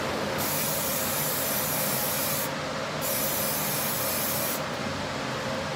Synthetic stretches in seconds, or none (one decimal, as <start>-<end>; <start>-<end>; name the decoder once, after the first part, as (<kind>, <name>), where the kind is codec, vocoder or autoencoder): none